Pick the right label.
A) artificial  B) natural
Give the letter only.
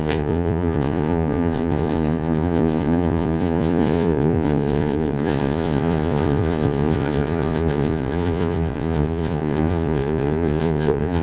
A